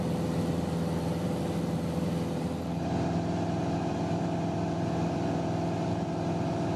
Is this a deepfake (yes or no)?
no